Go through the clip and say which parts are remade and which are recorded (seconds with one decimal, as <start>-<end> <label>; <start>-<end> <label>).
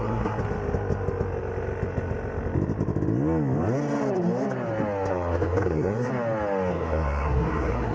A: 0.0-0.4 remade; 0.4-5.1 recorded; 5.1-6.1 remade; 6.1-6.7 recorded; 6.7-7.9 remade